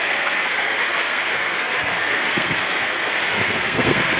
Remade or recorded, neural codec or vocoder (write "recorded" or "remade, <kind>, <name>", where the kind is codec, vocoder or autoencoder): remade, codec, SNAC